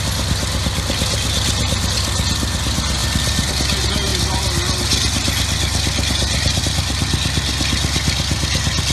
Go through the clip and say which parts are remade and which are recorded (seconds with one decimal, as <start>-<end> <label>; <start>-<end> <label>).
0.0-8.9 recorded